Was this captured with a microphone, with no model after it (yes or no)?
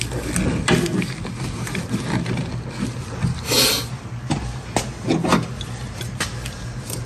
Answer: yes